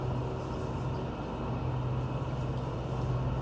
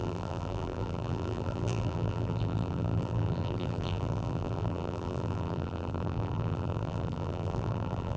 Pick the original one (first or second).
first